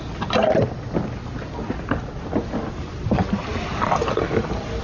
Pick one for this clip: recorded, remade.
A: recorded